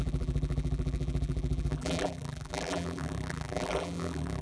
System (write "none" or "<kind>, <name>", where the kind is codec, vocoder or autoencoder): vocoder, BigVGAN v2